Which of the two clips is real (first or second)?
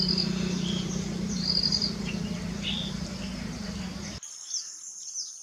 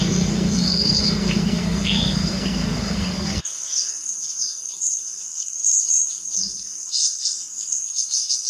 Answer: first